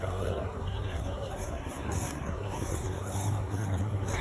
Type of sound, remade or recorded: remade